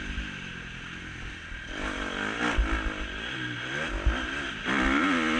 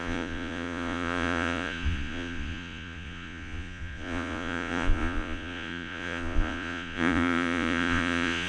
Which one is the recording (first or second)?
first